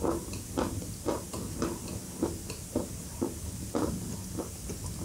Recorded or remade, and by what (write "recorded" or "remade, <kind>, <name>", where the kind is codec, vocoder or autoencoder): remade, vocoder, BigVGAN v2